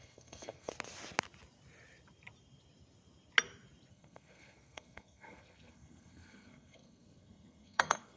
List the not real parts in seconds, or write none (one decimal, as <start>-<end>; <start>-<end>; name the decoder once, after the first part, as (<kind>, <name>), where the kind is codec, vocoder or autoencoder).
0.0-0.7 (codec, SNAC); 3.9-8.2